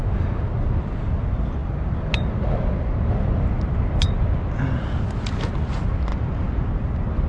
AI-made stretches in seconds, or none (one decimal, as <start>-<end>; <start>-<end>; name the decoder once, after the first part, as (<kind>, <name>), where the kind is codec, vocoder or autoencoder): none